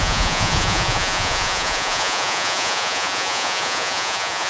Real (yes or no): no